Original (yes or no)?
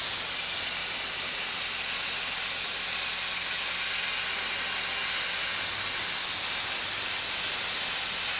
yes